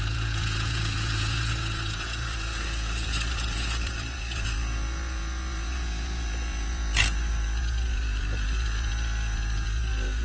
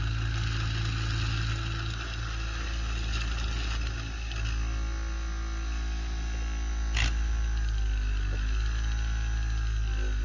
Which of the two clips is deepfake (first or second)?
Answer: first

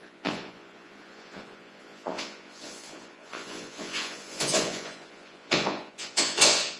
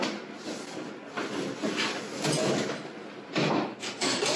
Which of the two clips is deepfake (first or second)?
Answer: first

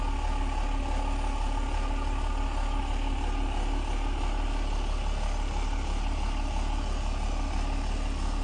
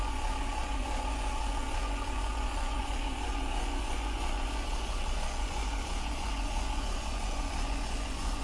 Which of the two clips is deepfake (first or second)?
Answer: second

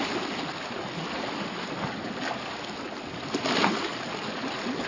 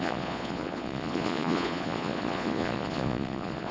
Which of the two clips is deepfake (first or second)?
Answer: second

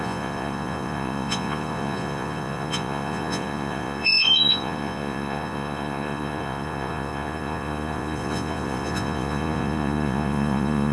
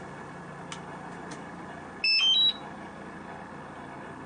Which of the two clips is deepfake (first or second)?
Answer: first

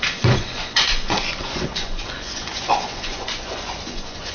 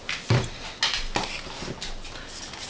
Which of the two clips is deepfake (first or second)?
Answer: first